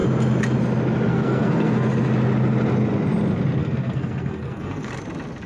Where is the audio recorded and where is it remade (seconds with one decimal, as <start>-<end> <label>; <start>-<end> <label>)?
0.0-1.1 recorded; 1.1-1.9 remade; 1.9-3.6 recorded; 3.6-4.9 remade; 4.9-5.5 recorded